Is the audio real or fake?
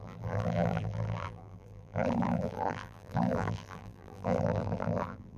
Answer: fake